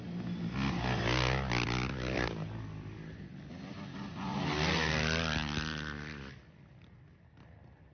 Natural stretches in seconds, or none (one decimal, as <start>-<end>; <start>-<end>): 0.0-7.9

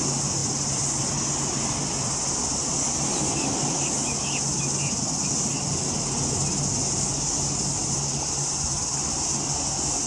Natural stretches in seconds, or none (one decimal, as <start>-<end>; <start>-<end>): 0.0-3.5; 4.4-7.8; 8.8-10.1

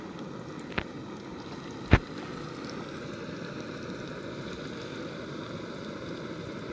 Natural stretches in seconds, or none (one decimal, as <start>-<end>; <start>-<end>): 0.0-6.7

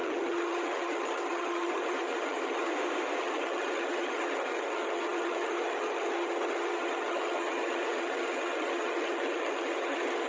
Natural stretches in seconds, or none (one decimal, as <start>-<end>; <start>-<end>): 2.7-3.2